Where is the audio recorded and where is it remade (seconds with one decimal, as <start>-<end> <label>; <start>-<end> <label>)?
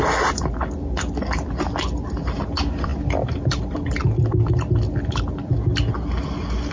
0.0-6.7 recorded